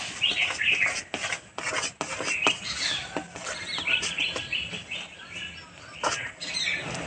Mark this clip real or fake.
real